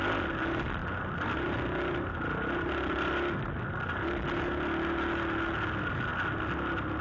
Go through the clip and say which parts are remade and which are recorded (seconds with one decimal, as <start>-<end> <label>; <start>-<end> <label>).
0.0-7.0 recorded